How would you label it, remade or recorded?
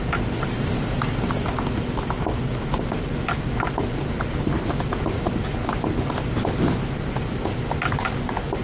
recorded